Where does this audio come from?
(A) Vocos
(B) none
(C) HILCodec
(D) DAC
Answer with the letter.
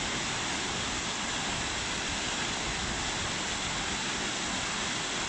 B